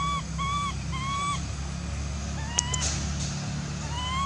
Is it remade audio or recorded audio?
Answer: recorded